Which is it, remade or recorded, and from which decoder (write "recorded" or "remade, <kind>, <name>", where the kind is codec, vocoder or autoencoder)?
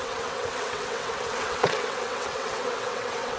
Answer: remade, vocoder, WaveNeXt